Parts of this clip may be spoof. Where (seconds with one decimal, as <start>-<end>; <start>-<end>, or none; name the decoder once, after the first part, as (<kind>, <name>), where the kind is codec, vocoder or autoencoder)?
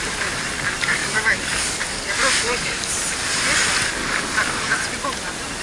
1.0-2.9 (codec, DAC); 4.0-4.8